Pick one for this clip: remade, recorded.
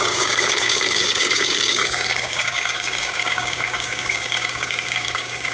remade